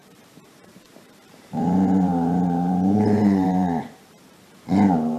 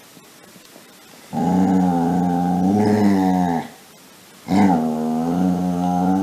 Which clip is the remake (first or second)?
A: first